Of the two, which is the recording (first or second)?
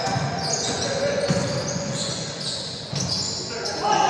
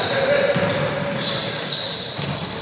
second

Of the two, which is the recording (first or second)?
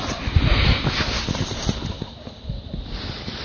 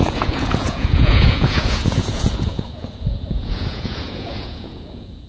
first